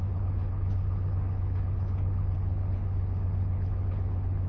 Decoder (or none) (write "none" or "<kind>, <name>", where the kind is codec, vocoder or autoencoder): codec, HILCodec